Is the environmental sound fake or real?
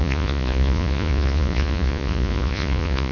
fake